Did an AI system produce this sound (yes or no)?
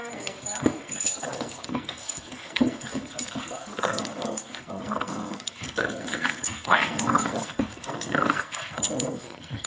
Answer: yes